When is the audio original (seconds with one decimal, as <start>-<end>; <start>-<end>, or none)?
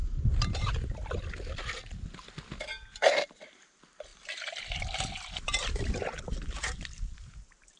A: 0.0-7.8